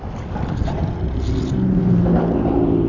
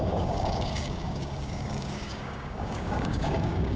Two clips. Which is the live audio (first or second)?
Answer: first